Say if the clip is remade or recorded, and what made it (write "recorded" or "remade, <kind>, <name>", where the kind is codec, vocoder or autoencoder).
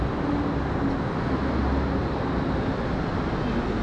recorded